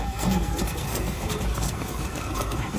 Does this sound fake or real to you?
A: fake